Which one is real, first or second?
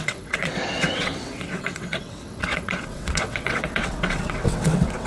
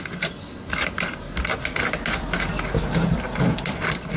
second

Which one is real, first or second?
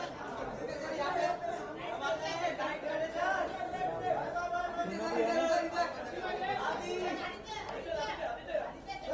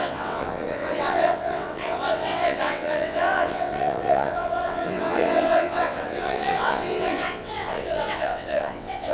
first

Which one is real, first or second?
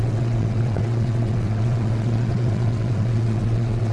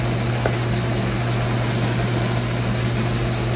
second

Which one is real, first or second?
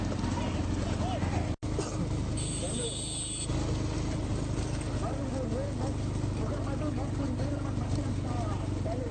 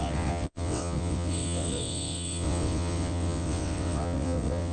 first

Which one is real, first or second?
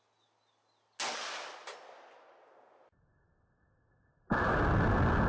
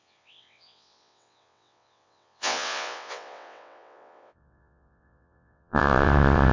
first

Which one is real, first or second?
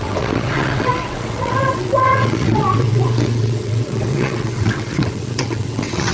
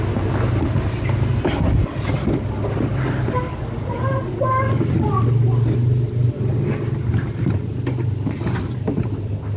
second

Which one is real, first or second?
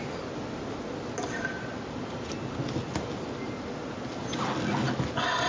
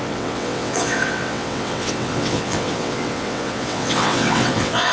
first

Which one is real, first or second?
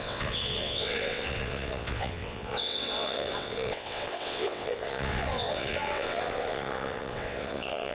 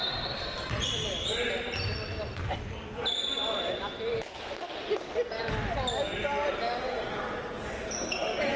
second